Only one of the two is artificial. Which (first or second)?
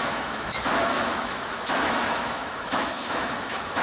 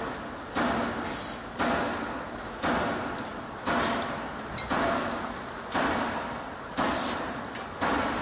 first